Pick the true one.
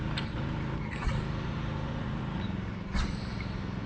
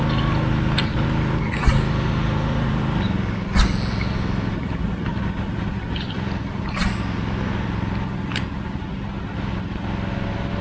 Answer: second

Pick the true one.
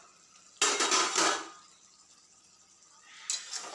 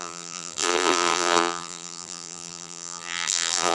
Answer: first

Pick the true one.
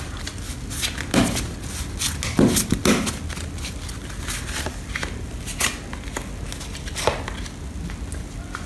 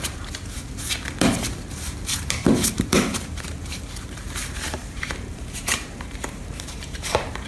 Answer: first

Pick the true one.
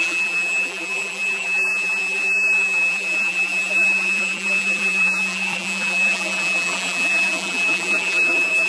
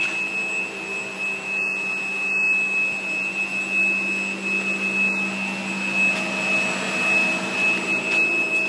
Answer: second